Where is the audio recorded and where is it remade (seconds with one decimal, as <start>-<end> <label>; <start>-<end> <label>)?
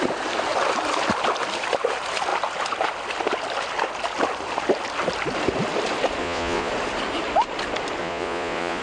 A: 0.0-6.2 recorded; 6.2-6.7 remade; 6.7-8.0 recorded; 8.0-8.8 remade